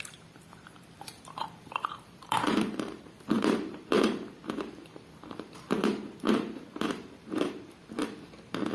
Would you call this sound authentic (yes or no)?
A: no